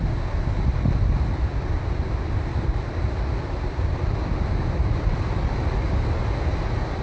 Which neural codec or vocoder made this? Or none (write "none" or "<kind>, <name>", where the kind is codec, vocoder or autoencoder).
none